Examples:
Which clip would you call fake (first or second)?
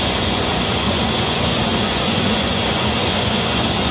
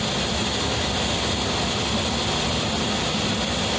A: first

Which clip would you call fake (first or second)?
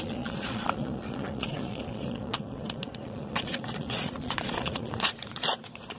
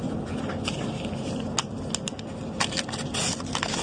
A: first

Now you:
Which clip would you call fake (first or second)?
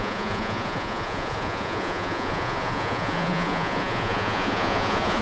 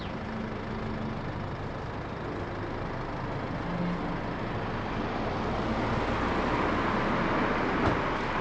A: first